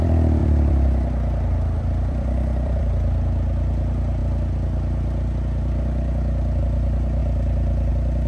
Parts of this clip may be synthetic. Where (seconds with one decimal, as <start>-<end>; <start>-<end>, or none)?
0.0-4.2; 6.6-7.2; 7.9-8.3